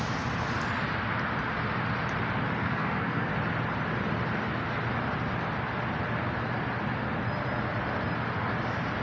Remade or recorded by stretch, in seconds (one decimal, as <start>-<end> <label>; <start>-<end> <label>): 0.0-2.6 recorded; 2.6-3.3 remade; 3.3-9.0 recorded